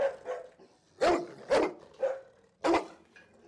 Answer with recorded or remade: recorded